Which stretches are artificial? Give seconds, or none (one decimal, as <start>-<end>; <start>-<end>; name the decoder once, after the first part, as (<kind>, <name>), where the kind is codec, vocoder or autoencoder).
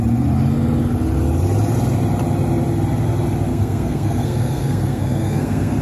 3.5-5.8 (codec, SNAC)